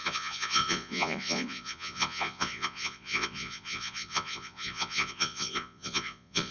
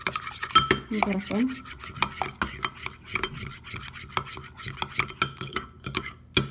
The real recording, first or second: second